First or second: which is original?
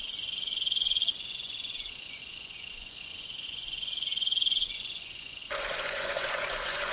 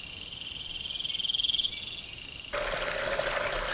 second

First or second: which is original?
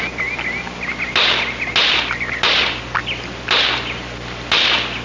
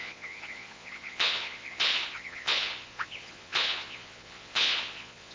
first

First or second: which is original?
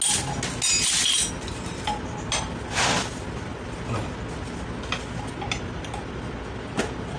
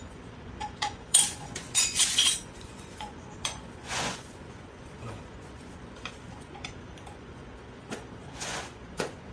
first